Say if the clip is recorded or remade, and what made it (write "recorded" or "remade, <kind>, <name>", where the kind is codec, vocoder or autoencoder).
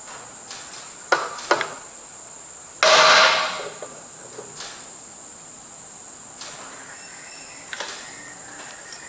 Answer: recorded